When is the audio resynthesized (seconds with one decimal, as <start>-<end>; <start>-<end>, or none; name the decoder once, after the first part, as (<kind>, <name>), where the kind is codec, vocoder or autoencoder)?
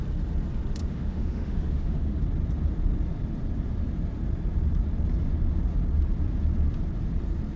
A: 0.8-2.2 (autoencoder, DAC-VAE)